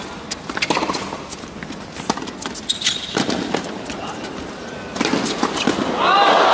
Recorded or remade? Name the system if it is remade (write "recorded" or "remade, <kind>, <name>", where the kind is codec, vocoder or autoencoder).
recorded